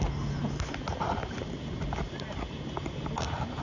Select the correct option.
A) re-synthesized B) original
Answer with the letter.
B